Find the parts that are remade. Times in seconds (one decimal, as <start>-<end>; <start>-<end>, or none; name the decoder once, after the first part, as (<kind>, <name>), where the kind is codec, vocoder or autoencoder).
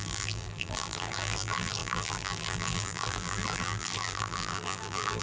0.0-5.2 (vocoder, BigVGAN v2)